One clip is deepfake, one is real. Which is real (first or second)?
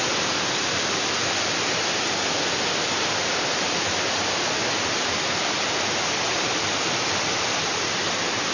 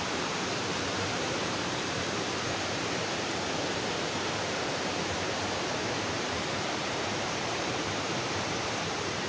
first